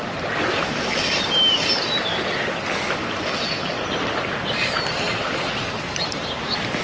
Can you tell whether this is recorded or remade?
recorded